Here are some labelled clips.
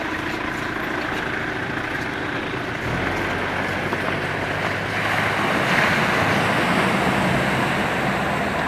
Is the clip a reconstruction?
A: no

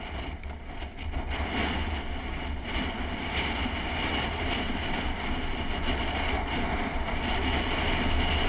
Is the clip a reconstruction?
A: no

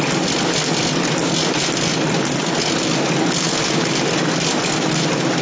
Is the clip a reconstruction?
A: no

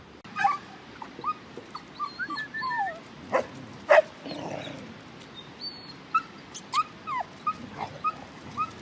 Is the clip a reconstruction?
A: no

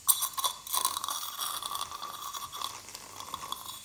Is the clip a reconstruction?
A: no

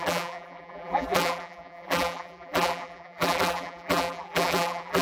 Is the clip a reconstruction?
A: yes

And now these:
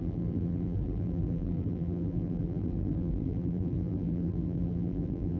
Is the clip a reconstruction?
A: yes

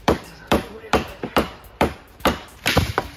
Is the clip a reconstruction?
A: yes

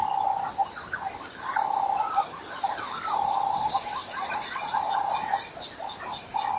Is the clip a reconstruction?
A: no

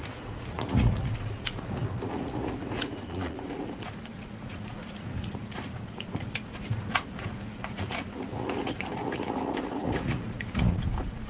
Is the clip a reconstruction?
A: yes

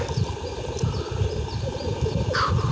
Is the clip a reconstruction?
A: no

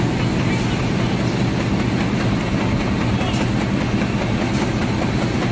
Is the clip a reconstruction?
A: no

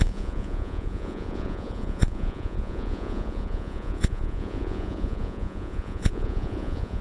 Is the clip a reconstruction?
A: yes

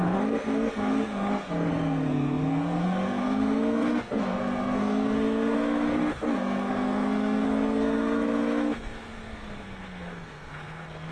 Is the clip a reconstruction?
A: yes